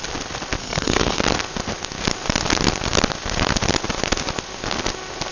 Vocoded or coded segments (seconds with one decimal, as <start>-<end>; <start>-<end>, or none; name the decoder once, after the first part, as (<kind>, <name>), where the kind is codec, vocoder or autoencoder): 0.6-1.2 (codec, SNAC)